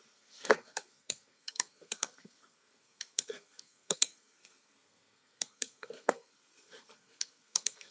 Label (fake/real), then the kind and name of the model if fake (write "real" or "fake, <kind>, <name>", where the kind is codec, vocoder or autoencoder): fake, codec, SNAC